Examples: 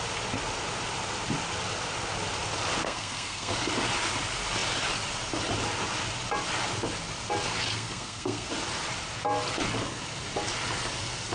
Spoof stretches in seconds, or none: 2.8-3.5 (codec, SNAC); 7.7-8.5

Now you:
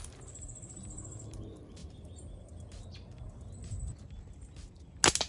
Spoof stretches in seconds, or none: none

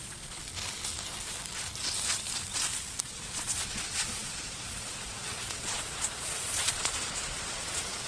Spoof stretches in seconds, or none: 0.0-0.4 (vocoder, Vocos); 3.0-8.1

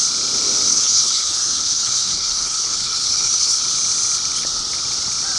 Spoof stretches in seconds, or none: 0.7-3.6 (codec, HILCodec)